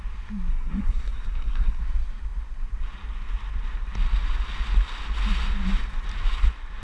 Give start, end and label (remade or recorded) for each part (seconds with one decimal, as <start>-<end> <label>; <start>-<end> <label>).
0.0-0.5 recorded; 0.5-1.8 remade; 1.8-6.8 recorded